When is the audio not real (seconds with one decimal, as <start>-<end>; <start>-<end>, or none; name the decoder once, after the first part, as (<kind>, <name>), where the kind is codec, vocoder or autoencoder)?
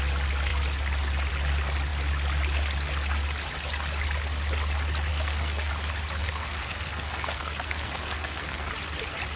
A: 5.1-5.7 (codec, SNAC); 6.2-8.7